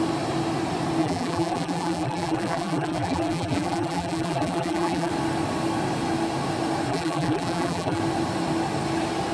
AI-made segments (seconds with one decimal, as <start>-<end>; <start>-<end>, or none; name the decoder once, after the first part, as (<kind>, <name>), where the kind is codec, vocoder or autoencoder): 1.0-5.1 (vocoder, BigVGAN v2); 6.9-8.0